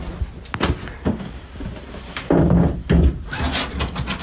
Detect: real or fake real